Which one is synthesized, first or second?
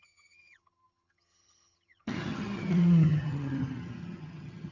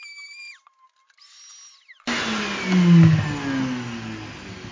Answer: first